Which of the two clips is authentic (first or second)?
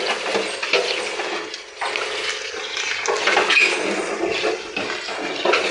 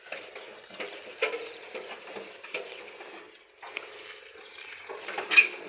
first